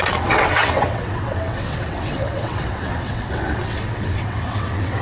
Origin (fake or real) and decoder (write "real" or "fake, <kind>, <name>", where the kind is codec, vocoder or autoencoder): fake, vocoder, WaveNeXt